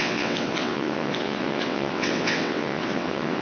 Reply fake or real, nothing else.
fake